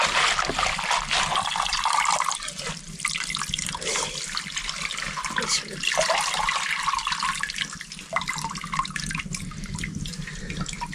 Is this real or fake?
real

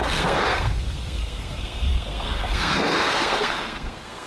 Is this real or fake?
fake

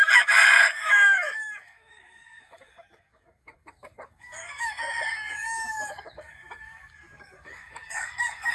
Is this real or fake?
fake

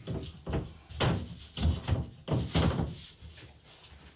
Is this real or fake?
real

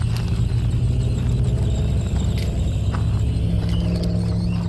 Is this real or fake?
real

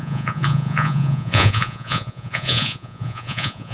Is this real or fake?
fake